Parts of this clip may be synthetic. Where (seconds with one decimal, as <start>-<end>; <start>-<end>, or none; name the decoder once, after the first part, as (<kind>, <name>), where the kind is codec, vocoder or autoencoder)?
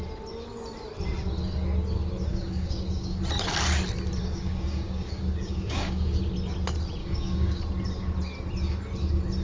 2.3-3.2 (codec, DAC); 4.2-6.2; 7.0-7.6